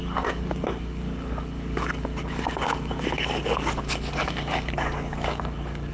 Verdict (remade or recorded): remade